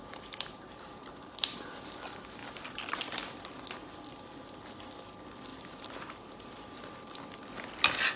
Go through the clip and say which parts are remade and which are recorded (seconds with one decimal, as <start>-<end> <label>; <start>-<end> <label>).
0.0-2.0 remade; 2.0-2.4 recorded; 2.4-3.0 remade; 3.0-5.5 recorded; 5.5-6.8 remade; 6.8-8.2 recorded